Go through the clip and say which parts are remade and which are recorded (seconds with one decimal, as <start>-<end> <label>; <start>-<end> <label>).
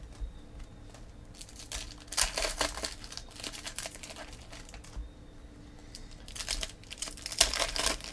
0.0-8.1 recorded